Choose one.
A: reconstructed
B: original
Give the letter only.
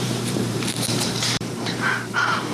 A